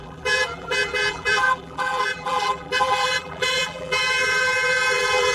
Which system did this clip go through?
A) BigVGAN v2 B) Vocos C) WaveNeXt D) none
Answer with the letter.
A